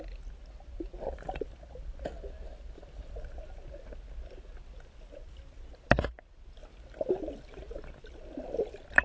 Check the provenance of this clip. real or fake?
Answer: real